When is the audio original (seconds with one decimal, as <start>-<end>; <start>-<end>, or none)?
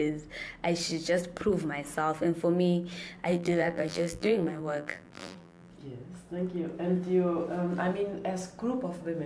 0.0-3.3; 5.7-9.3